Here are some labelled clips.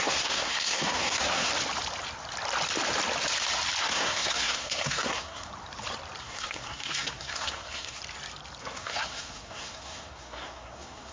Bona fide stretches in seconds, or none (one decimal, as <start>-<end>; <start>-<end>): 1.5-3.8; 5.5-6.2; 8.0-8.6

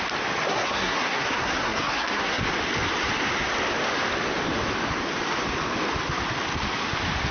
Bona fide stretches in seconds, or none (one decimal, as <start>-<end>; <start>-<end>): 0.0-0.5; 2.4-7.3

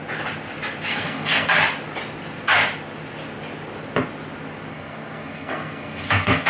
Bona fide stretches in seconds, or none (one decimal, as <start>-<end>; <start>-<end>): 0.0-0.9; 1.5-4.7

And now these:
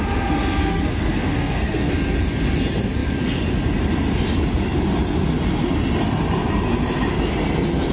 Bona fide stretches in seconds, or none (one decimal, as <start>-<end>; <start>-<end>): 0.0-0.6; 1.9-7.9

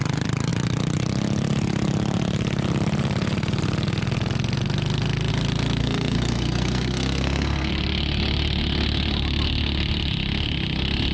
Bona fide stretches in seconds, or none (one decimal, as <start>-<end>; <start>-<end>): 0.0-5.8; 7.7-11.1

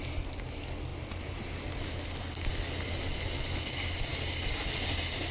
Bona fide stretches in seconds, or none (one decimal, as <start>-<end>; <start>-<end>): 0.0-5.3

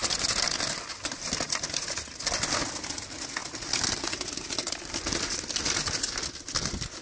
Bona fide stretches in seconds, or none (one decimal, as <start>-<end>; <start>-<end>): 0.0-7.0

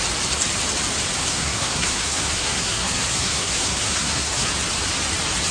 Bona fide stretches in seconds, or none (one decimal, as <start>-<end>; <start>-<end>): 0.0-1.2; 4.5-5.5